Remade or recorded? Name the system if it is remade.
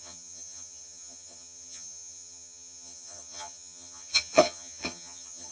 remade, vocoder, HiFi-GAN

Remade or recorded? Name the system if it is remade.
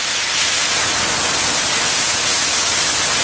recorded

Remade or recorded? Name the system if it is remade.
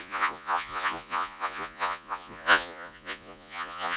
remade, vocoder, Vocos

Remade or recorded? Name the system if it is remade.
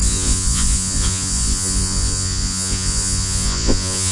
remade, vocoder, Vocos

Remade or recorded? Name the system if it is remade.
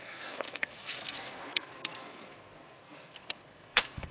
remade, codec, SNAC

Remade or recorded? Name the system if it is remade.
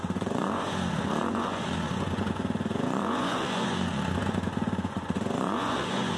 remade, vocoder, Vocos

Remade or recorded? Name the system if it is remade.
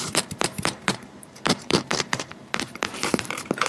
remade, vocoder, BigVGAN v2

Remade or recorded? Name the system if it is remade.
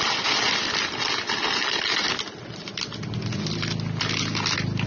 recorded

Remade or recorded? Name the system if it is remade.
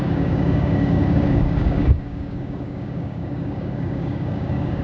remade, codec, DAC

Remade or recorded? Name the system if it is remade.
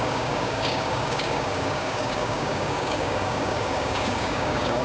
remade, codec, DAC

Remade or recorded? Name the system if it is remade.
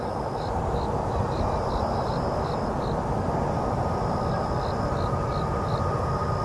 recorded